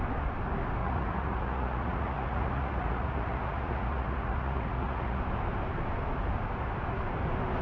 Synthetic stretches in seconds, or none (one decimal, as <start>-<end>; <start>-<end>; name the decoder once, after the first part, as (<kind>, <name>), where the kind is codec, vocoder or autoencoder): 0.8-5.2 (vocoder, Vocos)